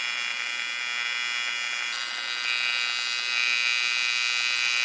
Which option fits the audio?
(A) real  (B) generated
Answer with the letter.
A